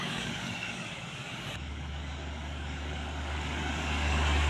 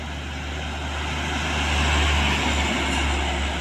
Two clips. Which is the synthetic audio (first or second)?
first